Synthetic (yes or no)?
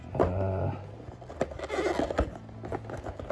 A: no